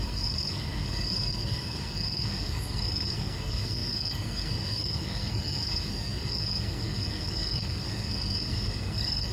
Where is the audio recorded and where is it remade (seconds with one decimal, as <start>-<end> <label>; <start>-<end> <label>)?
0.0-9.3 remade